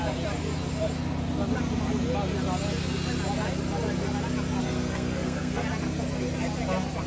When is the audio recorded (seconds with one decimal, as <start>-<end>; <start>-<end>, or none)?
0.0-4.6; 5.6-7.1

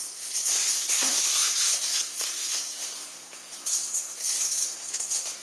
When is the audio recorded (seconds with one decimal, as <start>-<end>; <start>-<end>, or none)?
none

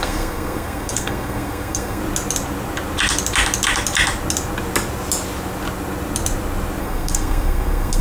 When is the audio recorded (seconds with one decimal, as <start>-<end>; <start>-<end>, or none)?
2.0-6.8

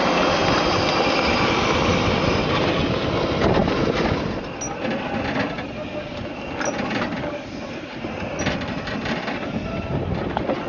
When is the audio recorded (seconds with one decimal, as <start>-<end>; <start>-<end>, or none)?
0.0-10.7